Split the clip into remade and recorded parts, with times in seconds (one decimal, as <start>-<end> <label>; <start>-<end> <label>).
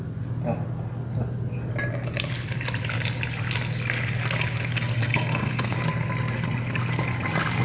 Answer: 0.0-4.9 recorded; 4.9-5.8 remade; 5.8-7.6 recorded